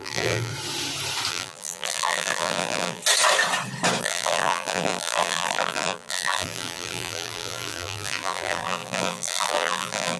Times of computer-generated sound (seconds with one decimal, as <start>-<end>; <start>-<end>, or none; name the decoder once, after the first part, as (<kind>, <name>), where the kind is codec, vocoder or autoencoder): 0.0-0.5 (vocoder, BigVGAN v2); 1.3-3.0; 4.0-10.2